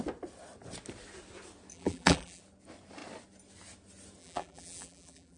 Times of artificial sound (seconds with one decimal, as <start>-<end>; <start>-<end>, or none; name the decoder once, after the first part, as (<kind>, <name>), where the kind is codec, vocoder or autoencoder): 1.7-2.4 (vocoder, BigVGAN v2); 4.2-5.4